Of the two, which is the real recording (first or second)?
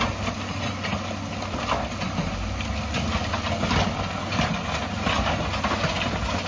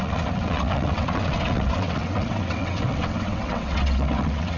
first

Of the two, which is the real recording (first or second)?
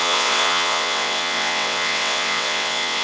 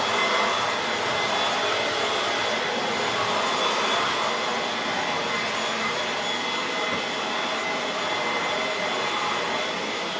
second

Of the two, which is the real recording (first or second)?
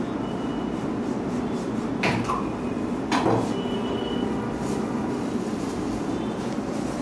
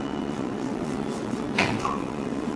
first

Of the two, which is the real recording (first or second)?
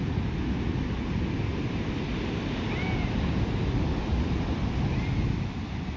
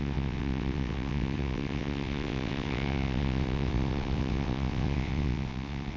first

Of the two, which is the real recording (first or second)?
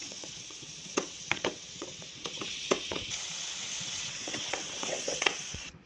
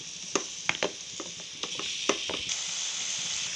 second